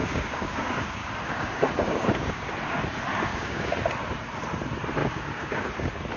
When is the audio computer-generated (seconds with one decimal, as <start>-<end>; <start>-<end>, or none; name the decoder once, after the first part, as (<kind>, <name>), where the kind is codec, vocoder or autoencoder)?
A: 0.0-2.5 (codec, DAC); 3.3-3.8; 5.0-5.7